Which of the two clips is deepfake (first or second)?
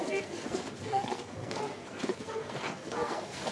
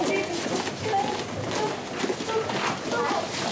first